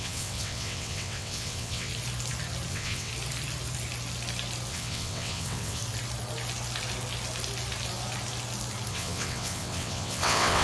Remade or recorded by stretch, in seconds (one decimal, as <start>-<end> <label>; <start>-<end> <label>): 0.0-1.9 remade; 1.9-2.7 recorded; 2.7-3.1 remade; 3.1-4.7 recorded; 4.7-5.8 remade; 5.8-8.9 recorded; 8.9-10.6 remade